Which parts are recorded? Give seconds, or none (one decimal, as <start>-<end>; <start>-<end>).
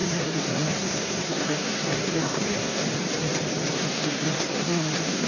2.8-3.7